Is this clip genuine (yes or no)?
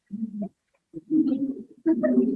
yes